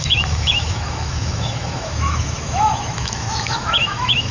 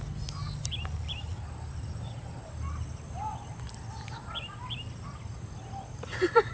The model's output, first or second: first